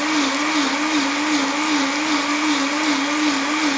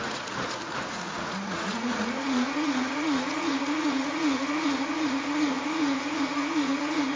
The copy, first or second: second